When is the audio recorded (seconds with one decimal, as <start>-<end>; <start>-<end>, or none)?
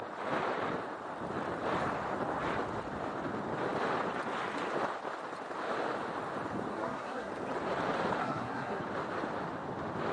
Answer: 0.0-6.7; 7.3-8.2; 8.8-10.1